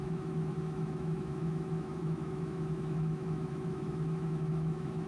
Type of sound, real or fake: fake